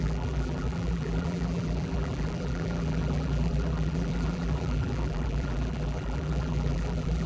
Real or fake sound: fake